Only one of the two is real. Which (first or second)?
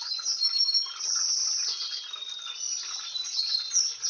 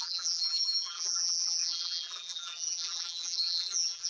first